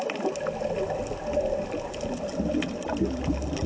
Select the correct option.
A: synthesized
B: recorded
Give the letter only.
B